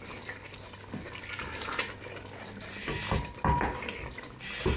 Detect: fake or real real